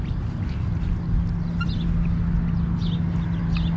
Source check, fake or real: real